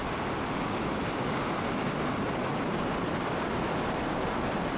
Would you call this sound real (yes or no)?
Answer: yes